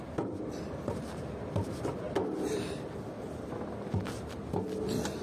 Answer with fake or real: real